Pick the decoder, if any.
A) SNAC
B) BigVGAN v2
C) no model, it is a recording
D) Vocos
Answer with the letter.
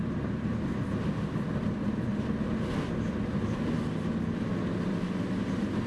C